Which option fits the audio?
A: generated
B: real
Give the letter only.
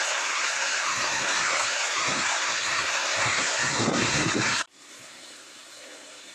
A